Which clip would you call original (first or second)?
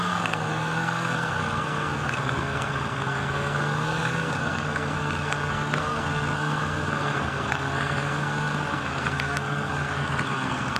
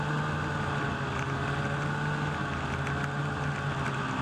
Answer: second